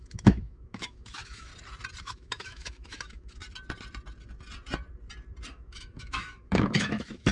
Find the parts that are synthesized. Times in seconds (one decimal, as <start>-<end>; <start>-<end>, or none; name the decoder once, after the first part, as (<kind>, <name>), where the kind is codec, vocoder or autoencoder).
0.0-1.5 (autoencoder, DAC-VAE); 2.0-3.4; 5.5-7.3